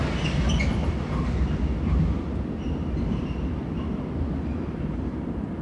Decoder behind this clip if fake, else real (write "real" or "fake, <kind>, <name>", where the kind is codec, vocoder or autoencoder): real